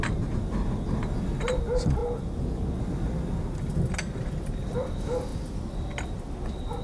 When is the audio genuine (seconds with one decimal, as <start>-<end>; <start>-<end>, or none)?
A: 0.0-6.8